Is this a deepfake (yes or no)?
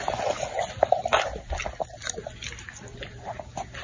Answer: no